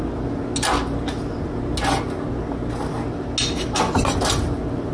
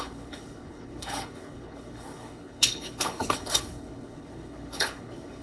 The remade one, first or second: second